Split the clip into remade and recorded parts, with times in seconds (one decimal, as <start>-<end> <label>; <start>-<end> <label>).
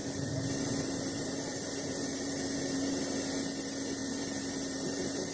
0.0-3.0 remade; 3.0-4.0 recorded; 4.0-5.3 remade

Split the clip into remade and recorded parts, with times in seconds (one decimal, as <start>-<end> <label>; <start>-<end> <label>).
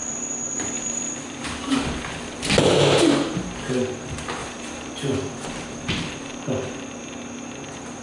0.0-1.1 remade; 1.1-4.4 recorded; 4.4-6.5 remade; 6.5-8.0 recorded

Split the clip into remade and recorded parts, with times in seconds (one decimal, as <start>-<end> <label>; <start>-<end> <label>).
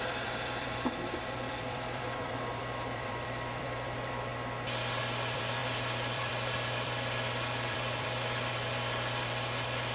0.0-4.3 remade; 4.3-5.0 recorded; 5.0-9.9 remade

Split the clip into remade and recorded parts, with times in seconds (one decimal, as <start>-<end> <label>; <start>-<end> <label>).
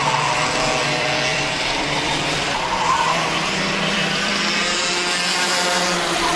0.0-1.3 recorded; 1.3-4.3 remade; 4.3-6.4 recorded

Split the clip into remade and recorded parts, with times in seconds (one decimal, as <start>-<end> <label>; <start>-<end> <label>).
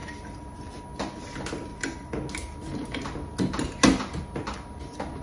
0.0-0.8 remade; 0.8-1.7 recorded; 1.7-2.3 remade; 2.3-5.2 recorded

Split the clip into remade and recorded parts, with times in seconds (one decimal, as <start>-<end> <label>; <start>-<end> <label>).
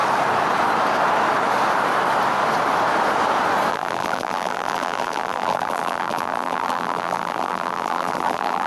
0.0-3.7 recorded; 3.7-8.7 remade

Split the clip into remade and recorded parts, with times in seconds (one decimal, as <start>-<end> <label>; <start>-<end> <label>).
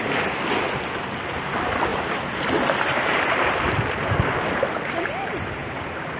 0.0-1.9 recorded; 1.9-2.4 remade; 2.4-2.9 recorded; 2.9-5.1 remade; 5.1-5.6 recorded; 5.6-6.2 remade